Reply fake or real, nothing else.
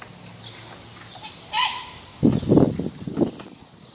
real